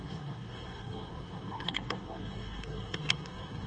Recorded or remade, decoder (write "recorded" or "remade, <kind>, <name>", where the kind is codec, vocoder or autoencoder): remade, codec, SNAC